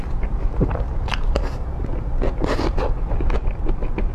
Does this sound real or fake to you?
fake